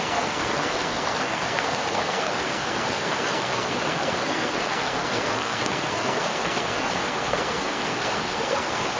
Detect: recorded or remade remade